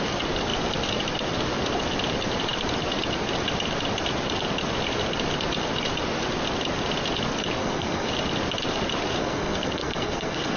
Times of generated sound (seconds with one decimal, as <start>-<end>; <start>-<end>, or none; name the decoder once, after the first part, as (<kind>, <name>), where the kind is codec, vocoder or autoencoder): 7.6-8.1 (codec, SNAC); 9.2-10.6